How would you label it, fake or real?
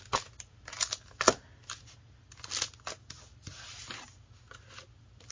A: real